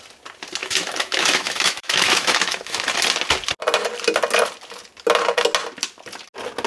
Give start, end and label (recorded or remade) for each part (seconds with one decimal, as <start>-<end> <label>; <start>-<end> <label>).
0.0-0.6 recorded; 0.6-2.8 remade; 2.8-6.7 recorded